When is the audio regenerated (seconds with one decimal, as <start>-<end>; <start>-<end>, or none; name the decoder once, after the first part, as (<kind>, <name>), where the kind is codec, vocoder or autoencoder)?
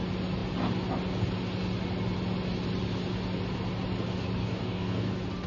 4.4-5.1 (codec, DAC)